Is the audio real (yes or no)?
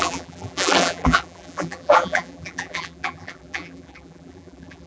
no